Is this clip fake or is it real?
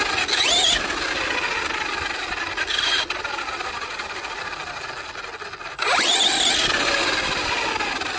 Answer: real